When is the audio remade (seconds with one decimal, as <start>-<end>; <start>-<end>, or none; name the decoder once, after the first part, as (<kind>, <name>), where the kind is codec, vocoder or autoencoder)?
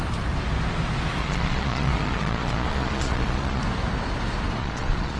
1.2-3.6 (vocoder, Vocos); 4.6-5.2